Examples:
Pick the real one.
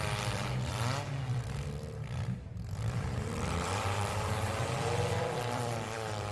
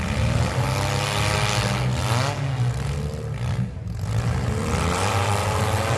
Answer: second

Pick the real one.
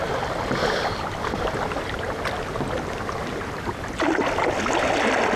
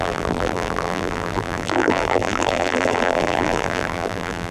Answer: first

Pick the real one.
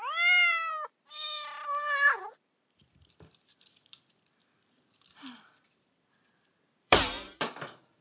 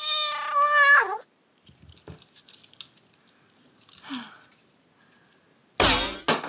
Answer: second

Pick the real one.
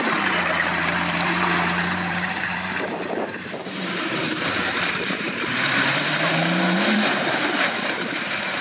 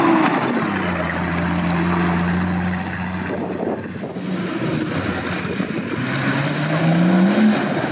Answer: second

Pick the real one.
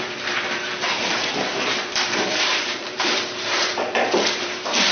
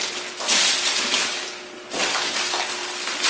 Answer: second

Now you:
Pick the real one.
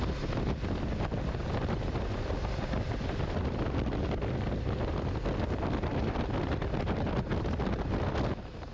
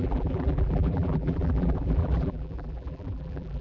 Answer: first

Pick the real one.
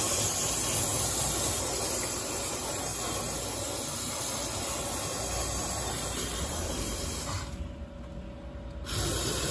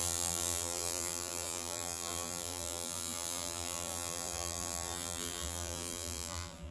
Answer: first